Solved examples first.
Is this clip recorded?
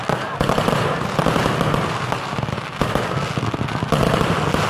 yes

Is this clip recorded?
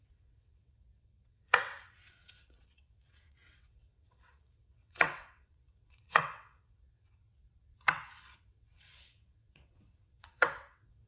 no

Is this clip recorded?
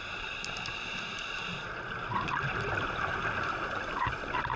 no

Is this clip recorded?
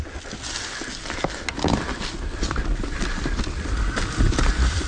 yes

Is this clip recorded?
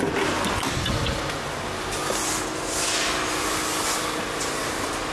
yes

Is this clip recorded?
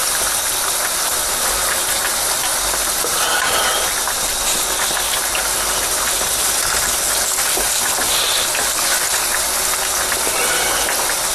yes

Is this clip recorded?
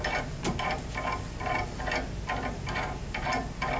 yes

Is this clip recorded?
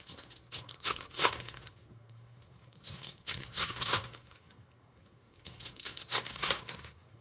no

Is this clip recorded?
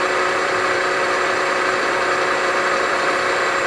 no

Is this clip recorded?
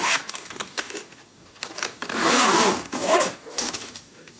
no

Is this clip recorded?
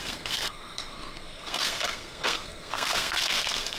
no